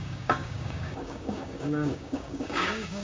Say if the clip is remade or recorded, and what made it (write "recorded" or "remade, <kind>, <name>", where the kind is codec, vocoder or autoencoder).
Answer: remade, codec, DAC